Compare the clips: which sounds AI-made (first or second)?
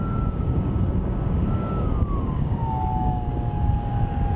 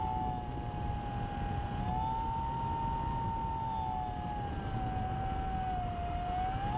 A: first